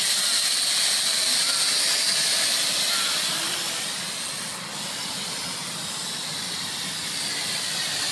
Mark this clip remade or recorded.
recorded